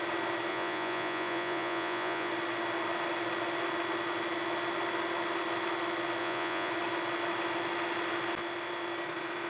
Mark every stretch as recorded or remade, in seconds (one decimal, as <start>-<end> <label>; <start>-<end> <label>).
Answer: 0.0-0.5 recorded; 0.5-2.3 remade; 2.3-6.2 recorded; 6.2-6.7 remade; 6.7-9.5 recorded

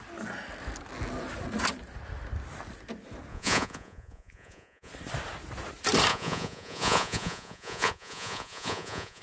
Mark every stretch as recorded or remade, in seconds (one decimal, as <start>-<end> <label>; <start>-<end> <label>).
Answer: 0.0-3.3 recorded; 3.3-4.9 remade; 4.9-6.1 recorded; 6.1-9.2 remade

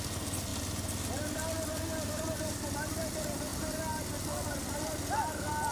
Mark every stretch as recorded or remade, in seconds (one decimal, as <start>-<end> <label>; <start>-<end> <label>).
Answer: 0.0-5.7 recorded

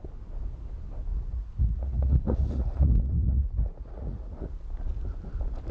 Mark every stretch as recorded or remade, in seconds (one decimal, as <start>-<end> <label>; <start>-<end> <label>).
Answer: 0.0-1.1 recorded; 1.1-4.5 remade; 4.5-5.7 recorded

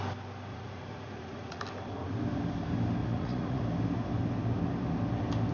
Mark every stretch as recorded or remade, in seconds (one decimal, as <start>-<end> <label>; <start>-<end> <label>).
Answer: 0.0-0.5 recorded; 0.5-1.6 remade; 1.6-3.0 recorded; 3.0-3.6 remade; 3.6-5.5 recorded